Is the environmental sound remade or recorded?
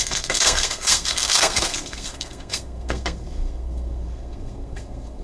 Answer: remade